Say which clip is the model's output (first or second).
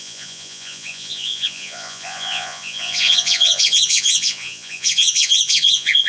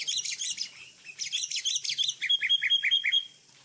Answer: first